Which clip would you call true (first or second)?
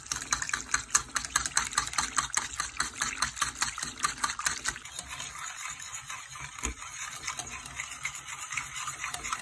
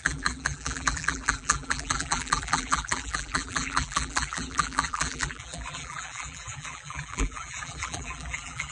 first